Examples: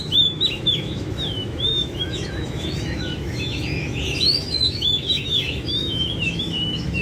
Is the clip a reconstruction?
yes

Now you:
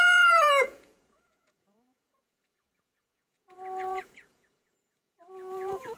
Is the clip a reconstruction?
yes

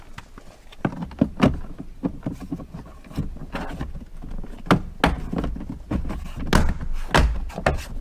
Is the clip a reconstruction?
no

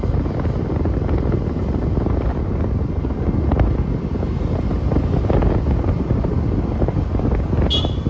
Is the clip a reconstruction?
no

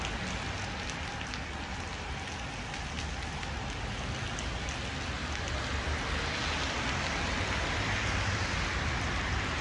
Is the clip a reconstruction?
no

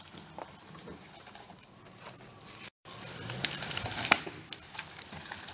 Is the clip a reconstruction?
yes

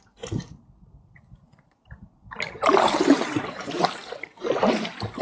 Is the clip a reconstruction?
yes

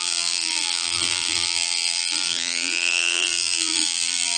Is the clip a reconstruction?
yes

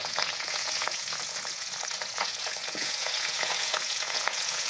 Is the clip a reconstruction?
yes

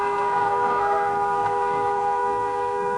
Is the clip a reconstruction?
yes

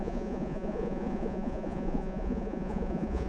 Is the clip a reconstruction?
yes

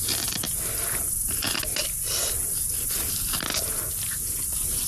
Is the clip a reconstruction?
no